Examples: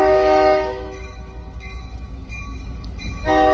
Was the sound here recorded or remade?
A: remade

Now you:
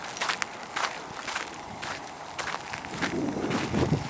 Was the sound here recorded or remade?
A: recorded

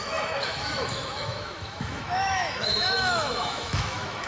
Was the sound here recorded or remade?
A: remade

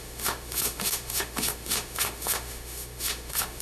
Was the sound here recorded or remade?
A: remade